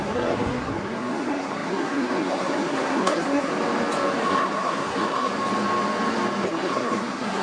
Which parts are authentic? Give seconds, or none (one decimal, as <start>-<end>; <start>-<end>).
3.5-4.2; 5.3-6.5